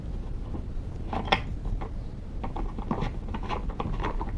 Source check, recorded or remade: recorded